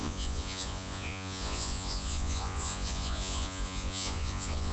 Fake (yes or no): yes